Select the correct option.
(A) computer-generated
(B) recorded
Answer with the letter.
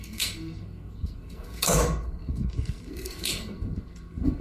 A